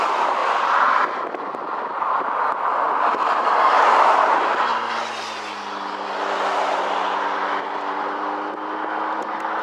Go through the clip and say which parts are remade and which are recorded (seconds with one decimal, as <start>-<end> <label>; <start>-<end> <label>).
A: 0.0-0.4 remade; 0.4-3.1 recorded; 3.1-4.7 remade; 4.7-9.6 recorded